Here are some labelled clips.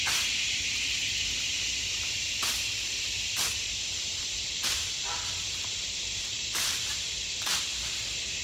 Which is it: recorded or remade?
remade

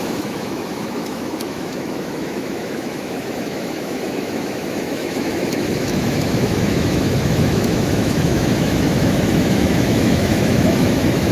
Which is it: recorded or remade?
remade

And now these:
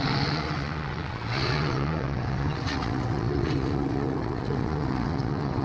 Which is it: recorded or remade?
remade